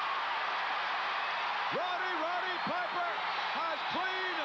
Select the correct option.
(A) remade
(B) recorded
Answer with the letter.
B